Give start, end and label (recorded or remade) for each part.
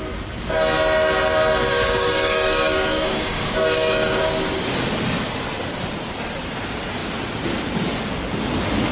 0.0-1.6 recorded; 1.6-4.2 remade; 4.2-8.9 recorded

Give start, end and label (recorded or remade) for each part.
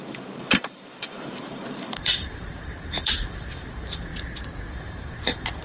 0.0-4.1 remade; 4.1-4.7 recorded; 4.7-5.6 remade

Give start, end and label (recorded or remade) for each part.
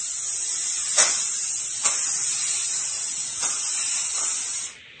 0.0-5.0 recorded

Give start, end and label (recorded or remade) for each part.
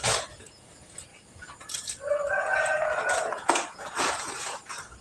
0.0-5.0 remade